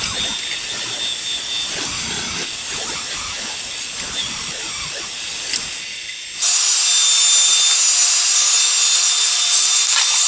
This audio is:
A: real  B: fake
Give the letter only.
A